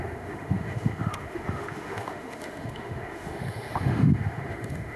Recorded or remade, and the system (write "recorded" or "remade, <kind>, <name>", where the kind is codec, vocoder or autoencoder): remade, autoencoder, DAC-VAE